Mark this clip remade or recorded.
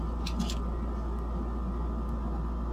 recorded